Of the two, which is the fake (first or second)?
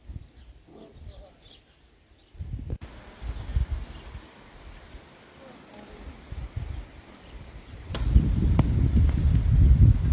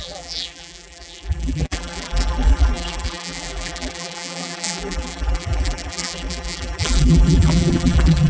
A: second